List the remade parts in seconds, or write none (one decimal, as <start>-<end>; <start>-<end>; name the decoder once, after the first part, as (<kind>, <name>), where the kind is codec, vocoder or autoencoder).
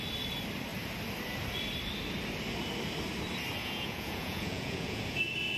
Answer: 3.6-5.6 (vocoder, Vocos)